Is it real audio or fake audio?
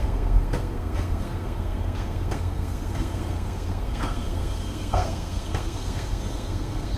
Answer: fake